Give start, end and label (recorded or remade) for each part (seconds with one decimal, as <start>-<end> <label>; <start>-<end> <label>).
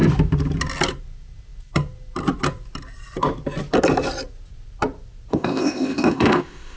0.0-5.3 recorded; 5.3-6.8 remade